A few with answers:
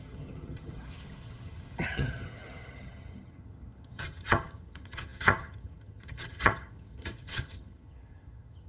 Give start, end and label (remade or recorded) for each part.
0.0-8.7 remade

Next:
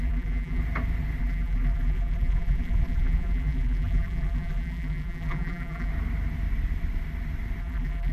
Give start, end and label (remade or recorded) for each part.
0.0-0.6 remade; 0.6-1.2 recorded; 1.2-5.9 remade; 5.9-7.6 recorded; 7.6-8.1 remade

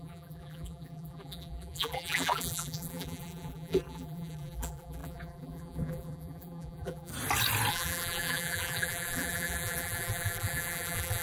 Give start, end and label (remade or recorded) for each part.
0.0-7.1 remade; 7.1-7.7 recorded; 7.7-11.2 remade

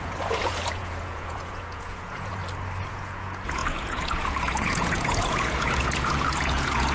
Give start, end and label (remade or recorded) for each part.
0.0-2.4 remade; 2.4-2.9 recorded; 2.9-6.9 remade

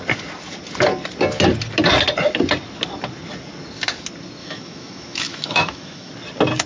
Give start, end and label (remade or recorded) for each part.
0.0-4.4 recorded; 4.4-6.1 remade; 6.1-6.7 recorded

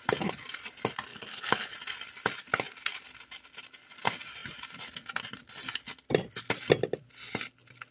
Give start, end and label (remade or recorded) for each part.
0.0-1.1 recorded; 1.1-1.7 remade; 1.7-7.9 recorded

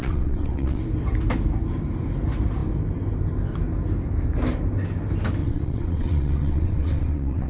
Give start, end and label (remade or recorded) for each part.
0.0-0.8 remade; 0.8-5.4 recorded; 5.4-7.5 remade

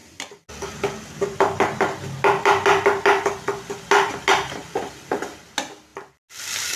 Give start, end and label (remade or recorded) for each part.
0.0-6.8 recorded